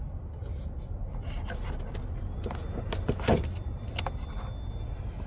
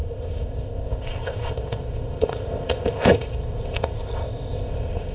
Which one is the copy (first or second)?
second